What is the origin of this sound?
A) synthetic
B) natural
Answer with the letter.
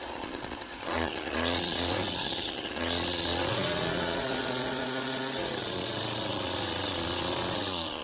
A